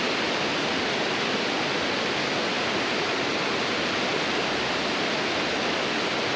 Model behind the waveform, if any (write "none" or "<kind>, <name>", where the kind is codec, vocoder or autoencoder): none